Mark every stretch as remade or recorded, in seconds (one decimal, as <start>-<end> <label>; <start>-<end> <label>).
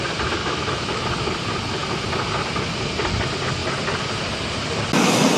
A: 0.0-0.4 recorded; 0.4-1.0 remade; 1.0-5.4 recorded